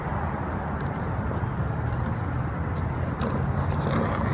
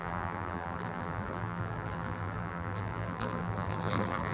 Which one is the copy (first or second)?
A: second